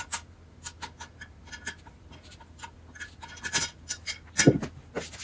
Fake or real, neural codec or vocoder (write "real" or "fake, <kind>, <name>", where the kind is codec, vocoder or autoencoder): real